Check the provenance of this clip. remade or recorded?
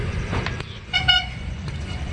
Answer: remade